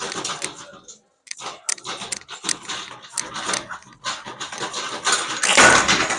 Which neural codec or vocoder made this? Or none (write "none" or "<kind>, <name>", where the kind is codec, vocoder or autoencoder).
none